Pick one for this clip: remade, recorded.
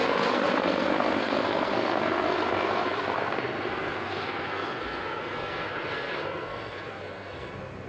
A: remade